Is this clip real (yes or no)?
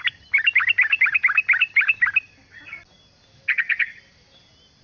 yes